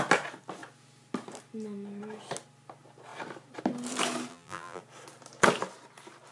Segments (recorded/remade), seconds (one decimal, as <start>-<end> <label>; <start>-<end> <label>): 0.0-4.3 recorded; 4.3-4.8 remade; 4.8-6.3 recorded